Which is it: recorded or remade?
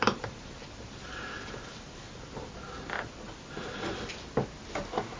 recorded